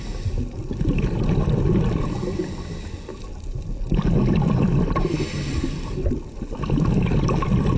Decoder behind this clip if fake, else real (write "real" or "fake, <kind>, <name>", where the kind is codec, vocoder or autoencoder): real